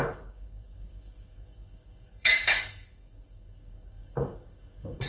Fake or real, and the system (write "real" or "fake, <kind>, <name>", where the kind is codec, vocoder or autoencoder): fake, codec, DAC